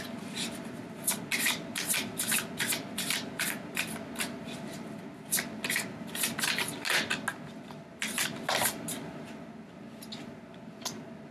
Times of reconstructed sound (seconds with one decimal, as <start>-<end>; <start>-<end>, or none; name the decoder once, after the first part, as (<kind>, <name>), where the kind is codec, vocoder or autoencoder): none